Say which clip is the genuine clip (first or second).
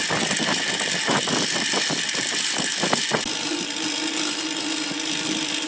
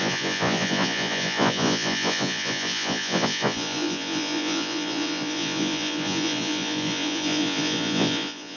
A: first